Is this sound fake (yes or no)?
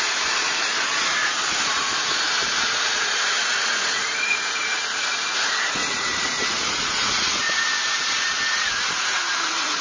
yes